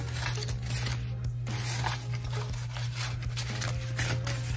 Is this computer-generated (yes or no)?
no